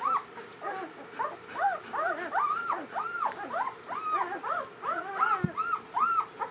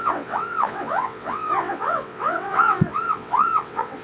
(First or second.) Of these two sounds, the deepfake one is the second